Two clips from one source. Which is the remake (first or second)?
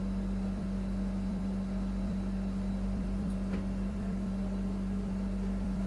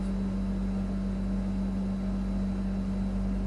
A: first